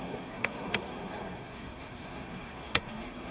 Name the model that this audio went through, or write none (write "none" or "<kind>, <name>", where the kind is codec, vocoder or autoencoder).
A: codec, SNAC